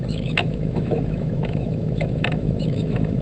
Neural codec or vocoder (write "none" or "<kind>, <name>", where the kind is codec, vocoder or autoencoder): autoencoder, DAC-VAE